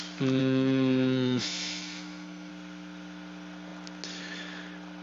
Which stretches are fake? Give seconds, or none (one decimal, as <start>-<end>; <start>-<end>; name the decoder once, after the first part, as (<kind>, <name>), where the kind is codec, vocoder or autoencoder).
0.4-2.5 (codec, SNAC)